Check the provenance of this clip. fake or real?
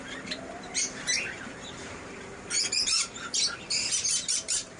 fake